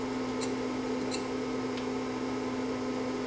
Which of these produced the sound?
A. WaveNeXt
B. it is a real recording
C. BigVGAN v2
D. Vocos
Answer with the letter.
B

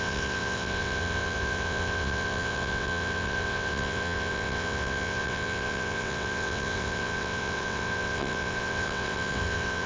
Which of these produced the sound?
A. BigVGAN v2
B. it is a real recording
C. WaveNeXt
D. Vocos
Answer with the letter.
C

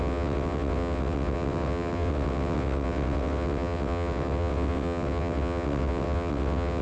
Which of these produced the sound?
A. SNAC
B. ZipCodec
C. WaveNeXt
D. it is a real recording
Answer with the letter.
C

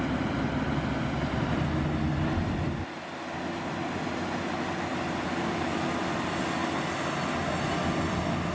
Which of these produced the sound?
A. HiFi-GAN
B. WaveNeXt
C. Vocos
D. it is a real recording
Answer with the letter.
D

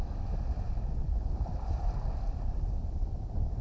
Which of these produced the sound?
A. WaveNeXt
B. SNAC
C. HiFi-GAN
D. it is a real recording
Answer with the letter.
D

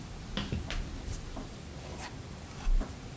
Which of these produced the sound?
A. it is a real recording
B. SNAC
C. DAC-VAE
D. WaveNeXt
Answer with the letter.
A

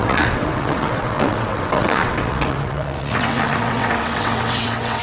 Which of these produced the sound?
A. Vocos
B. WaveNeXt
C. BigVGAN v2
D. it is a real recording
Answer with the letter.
B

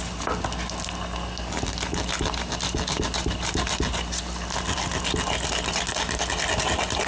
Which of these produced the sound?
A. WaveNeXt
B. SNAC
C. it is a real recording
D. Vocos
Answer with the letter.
C